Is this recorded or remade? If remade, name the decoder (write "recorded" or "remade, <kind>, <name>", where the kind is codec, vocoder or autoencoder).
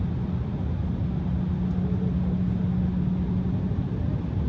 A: recorded